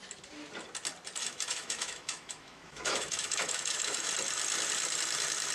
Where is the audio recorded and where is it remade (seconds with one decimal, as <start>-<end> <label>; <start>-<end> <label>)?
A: 0.0-1.2 recorded; 1.2-4.1 remade; 4.1-5.5 recorded